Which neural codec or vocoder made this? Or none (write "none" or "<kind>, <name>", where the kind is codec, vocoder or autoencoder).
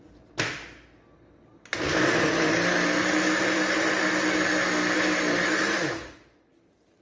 none